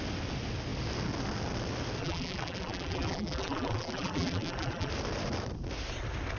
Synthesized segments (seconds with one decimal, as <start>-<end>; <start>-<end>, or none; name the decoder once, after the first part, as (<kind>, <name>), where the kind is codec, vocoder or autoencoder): 2.0-4.9 (vocoder, BigVGAN v2)